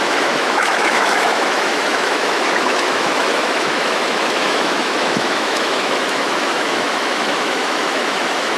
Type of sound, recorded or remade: remade